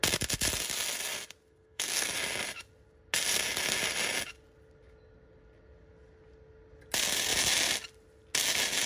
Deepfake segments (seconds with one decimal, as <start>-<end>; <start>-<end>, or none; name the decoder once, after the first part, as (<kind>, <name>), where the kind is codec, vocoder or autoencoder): 1.4-2.1 (codec, SNAC)